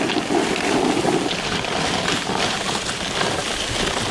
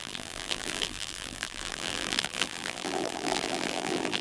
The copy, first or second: second